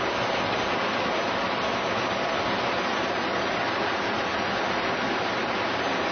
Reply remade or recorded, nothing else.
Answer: recorded